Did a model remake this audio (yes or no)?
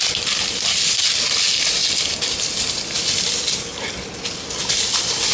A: no